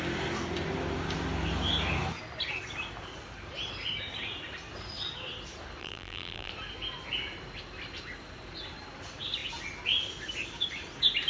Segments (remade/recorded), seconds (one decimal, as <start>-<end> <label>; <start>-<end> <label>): 0.0-5.8 recorded; 5.8-6.5 remade; 6.5-11.3 recorded

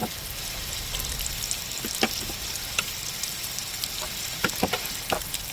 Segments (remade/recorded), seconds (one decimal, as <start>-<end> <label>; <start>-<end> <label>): 0.0-5.5 recorded

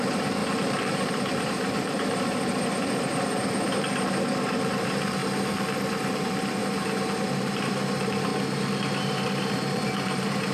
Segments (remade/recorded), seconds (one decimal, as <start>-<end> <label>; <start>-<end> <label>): 0.0-0.4 remade; 0.4-1.1 recorded; 1.1-5.2 remade; 5.2-6.1 recorded; 6.1-6.6 remade; 6.6-7.3 recorded; 7.3-8.3 remade; 8.3-9.1 recorded; 9.1-10.5 remade